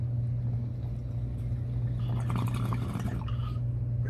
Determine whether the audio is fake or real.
real